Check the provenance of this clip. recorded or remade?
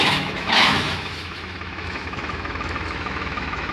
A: remade